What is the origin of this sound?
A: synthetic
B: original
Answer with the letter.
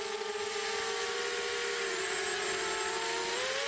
B